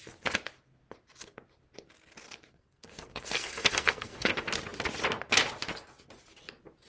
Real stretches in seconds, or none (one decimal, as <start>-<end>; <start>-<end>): 0.0-2.5; 4.3-6.9